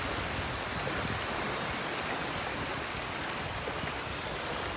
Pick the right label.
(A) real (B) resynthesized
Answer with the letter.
A